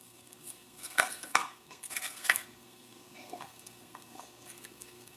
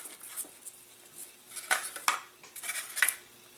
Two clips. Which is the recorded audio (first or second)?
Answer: second